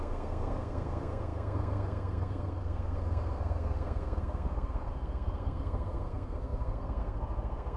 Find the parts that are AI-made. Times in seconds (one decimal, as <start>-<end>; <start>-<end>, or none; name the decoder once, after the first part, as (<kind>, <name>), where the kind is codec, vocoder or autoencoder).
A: 0.0-7.8 (codec, SNAC)